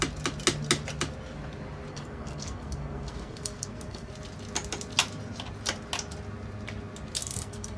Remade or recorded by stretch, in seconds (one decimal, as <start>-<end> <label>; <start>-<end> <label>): 0.0-1.9 recorded; 1.9-4.1 remade; 4.1-7.2 recorded; 7.2-7.8 remade